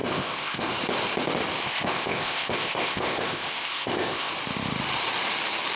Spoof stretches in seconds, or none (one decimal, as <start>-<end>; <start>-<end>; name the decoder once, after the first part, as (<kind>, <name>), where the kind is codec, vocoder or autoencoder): 0.0-0.7 (codec, ZipCodec); 1.6-4.3